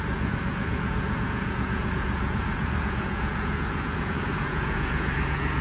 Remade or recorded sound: remade